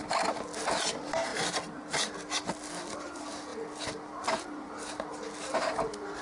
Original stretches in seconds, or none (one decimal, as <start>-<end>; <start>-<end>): 0.0-6.2